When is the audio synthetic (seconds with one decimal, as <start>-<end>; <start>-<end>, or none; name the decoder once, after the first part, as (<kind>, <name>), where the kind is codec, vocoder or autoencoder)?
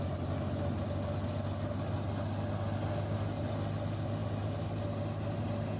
none